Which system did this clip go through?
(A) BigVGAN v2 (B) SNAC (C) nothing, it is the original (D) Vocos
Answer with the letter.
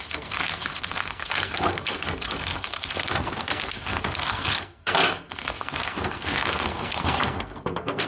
B